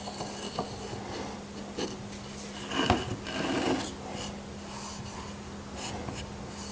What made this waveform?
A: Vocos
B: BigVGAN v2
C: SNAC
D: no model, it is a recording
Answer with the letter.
D